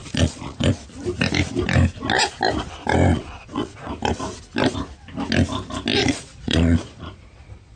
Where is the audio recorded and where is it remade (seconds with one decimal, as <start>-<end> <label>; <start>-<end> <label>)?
0.0-0.7 remade; 0.7-3.1 recorded; 3.1-3.9 remade; 3.9-6.0 recorded; 6.0-7.8 remade